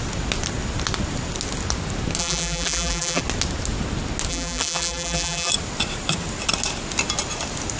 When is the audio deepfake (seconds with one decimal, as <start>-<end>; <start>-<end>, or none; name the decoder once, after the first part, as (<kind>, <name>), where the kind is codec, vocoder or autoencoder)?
2.2-3.2 (vocoder, BigVGAN v2); 4.3-5.5